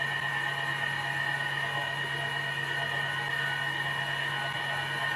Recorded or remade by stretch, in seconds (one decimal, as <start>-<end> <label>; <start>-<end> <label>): 0.0-5.2 recorded